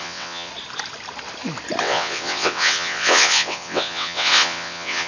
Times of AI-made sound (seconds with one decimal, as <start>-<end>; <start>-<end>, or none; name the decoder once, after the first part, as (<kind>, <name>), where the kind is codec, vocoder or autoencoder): 0.0-0.5 (vocoder, WaveNeXt); 1.8-5.1